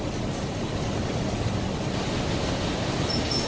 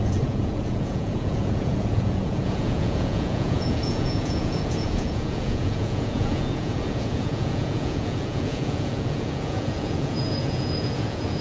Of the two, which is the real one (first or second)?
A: first